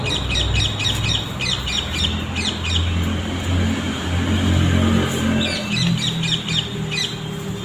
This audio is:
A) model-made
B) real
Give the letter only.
B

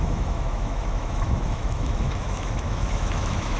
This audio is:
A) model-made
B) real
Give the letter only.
A